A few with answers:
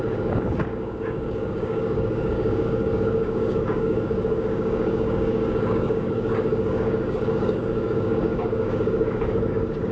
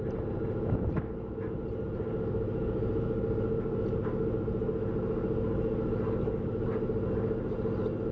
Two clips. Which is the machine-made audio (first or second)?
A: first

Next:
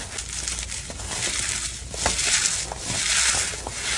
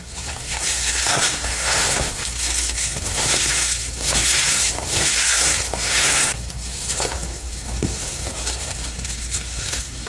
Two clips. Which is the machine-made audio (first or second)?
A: second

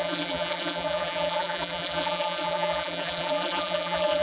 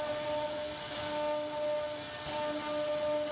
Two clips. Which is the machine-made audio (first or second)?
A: first